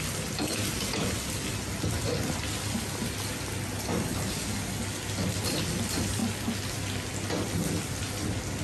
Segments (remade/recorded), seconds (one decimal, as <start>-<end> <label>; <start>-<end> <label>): 0.0-8.6 recorded

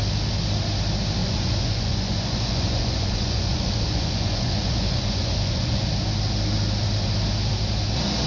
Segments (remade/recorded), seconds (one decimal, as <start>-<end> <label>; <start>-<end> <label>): 0.0-1.2 recorded; 1.2-5.9 remade; 5.9-8.3 recorded

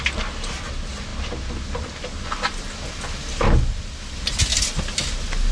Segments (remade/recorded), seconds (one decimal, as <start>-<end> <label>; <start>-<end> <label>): 0.0-5.5 recorded

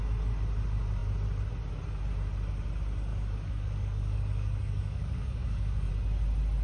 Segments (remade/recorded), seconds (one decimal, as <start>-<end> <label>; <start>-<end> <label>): 0.0-3.1 recorded; 3.1-5.9 remade; 5.9-6.6 recorded

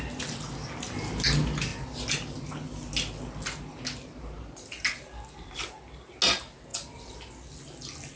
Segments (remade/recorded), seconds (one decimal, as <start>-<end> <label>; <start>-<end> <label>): 0.0-8.2 recorded

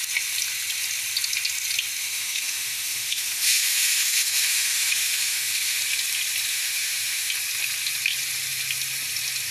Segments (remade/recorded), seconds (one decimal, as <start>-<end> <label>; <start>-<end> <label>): 0.0-2.0 recorded; 2.0-5.8 remade; 5.8-6.5 recorded; 6.5-7.3 remade; 7.3-9.5 recorded

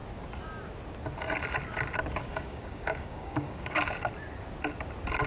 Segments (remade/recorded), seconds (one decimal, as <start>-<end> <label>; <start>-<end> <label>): 0.0-2.3 recorded; 2.3-3.8 remade; 3.8-5.3 recorded

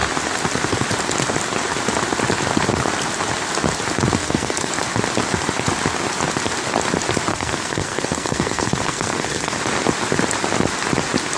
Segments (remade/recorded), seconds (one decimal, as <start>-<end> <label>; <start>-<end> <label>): 0.0-4.2 recorded; 4.2-4.7 remade; 4.7-7.3 recorded; 7.3-9.6 remade; 9.6-11.4 recorded